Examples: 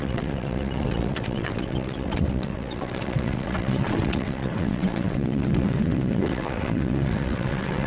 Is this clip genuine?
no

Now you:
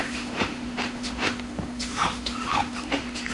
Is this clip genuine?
no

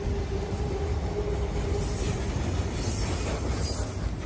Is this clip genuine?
yes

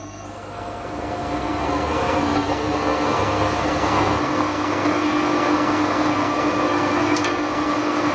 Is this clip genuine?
no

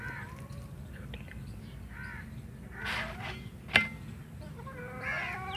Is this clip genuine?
yes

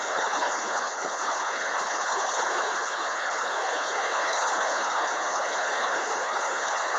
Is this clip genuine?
no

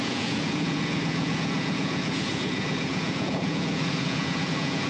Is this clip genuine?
no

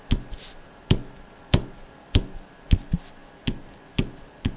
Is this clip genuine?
yes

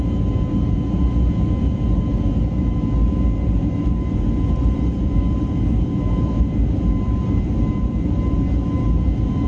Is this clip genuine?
no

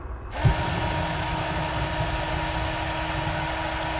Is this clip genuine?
yes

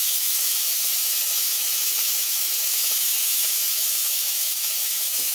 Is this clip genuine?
no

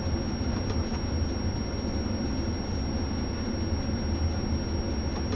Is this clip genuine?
yes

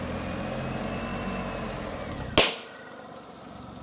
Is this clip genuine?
yes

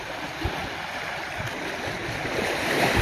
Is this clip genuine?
yes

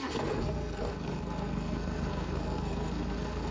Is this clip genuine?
no